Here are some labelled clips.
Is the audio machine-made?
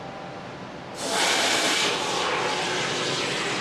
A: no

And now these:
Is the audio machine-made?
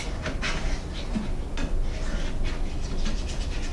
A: no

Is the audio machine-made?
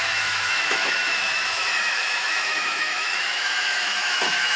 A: yes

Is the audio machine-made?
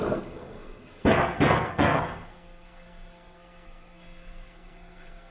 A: yes